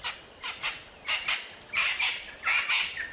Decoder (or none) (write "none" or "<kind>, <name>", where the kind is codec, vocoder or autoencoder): none